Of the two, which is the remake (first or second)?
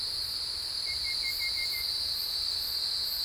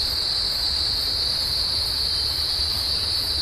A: second